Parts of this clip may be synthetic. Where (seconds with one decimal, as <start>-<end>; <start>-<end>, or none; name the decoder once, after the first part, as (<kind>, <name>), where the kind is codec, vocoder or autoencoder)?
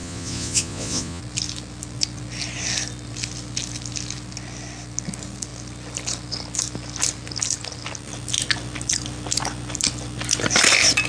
0.0-1.2 (vocoder, Vocos)